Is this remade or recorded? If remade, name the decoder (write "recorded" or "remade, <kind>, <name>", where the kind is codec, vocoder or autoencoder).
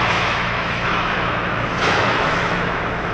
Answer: remade, autoencoder, DAC-VAE